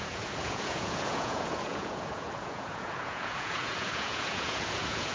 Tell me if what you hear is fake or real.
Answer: fake